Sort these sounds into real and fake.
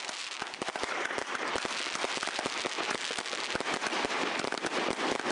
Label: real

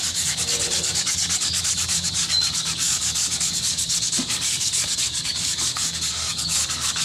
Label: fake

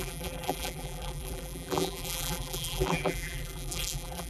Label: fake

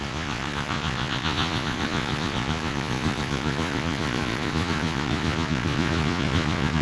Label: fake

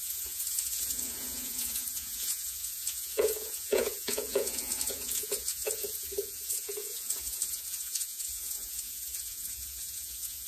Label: fake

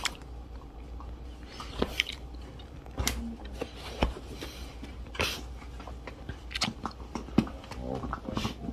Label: real